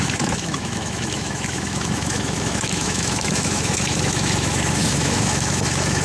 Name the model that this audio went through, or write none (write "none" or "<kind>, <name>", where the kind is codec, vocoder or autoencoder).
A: autoencoder, DAC-VAE